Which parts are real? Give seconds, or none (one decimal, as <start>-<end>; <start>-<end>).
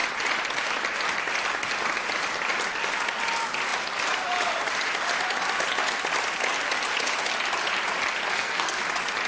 0.0-8.3; 8.8-9.3